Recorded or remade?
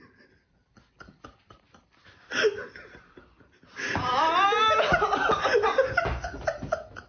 recorded